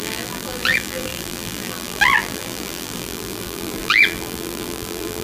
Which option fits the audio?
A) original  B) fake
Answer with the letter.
B